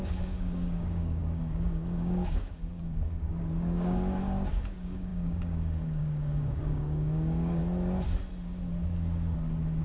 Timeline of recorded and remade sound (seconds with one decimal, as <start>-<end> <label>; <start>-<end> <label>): 0.0-7.6 remade; 7.6-9.8 recorded